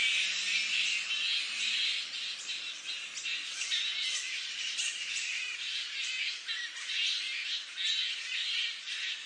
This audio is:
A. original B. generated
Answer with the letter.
A